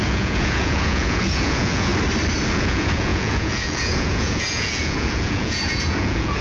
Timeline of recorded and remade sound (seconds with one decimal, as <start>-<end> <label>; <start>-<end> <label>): 0.0-1.9 remade; 1.9-2.5 recorded; 2.5-6.4 remade